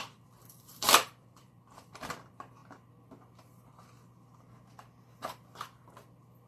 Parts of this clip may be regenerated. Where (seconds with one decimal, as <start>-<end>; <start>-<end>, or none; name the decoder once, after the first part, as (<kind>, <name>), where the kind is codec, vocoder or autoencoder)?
0.0-2.6 (vocoder, BigVGAN v2)